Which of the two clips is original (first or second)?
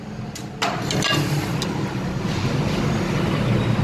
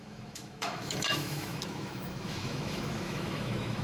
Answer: first